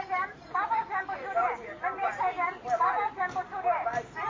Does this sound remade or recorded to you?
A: recorded